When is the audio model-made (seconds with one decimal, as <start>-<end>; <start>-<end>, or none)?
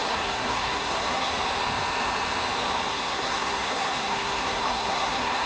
0.0-1.3; 2.9-5.5